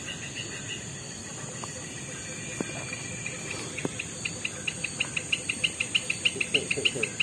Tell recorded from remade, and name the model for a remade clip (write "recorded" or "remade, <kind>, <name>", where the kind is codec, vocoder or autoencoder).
recorded